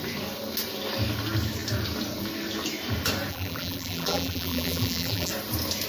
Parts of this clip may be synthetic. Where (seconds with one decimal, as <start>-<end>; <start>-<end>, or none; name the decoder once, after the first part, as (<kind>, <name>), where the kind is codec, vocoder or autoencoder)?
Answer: 3.3-5.3 (vocoder, BigVGAN v2)